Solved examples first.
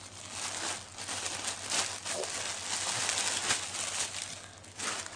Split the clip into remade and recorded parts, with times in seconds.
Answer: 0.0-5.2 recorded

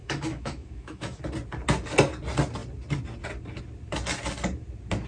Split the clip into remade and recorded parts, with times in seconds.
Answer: 0.0-1.2 remade; 1.2-5.1 recorded

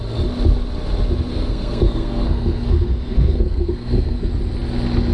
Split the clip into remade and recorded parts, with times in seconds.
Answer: 0.0-1.3 recorded; 1.3-4.3 remade; 4.3-5.1 recorded